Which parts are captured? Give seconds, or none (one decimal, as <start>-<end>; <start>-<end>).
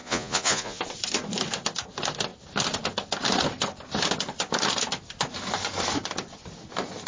0.8-7.1